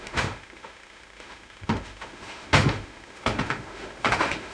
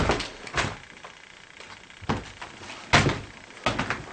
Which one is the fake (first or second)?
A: first